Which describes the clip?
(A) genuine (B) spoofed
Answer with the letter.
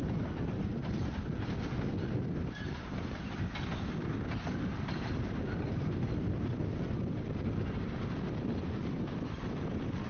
A